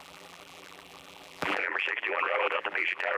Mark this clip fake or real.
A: fake